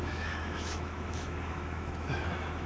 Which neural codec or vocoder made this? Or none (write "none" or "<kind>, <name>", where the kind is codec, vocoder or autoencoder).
autoencoder, DAC-VAE